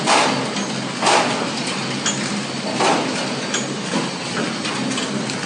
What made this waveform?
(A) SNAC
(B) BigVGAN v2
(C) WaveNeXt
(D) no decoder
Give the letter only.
D